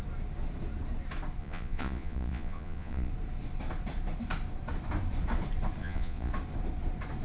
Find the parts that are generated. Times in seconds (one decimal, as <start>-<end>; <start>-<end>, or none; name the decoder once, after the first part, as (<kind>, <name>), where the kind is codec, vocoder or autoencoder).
1.4-3.1 (vocoder, Vocos); 5.8-6.3